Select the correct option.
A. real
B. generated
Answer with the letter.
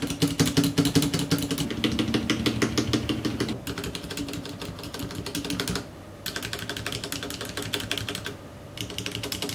A